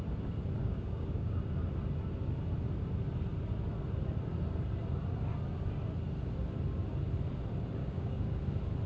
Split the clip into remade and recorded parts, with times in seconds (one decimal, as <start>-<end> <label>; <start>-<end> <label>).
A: 0.0-0.6 recorded; 0.6-1.4 remade; 1.4-7.8 recorded; 7.8-8.4 remade; 8.4-8.9 recorded